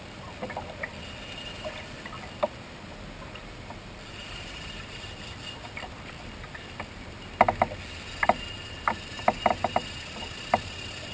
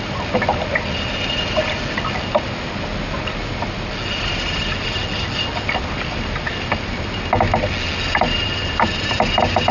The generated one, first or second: first